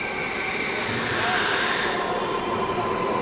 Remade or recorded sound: recorded